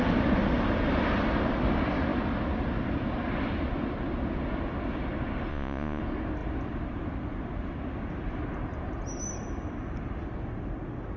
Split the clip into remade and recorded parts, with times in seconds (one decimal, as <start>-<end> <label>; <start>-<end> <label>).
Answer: 0.0-5.5 recorded; 5.5-6.0 remade; 6.0-11.2 recorded